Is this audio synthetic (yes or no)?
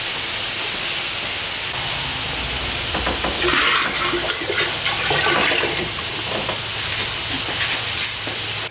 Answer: no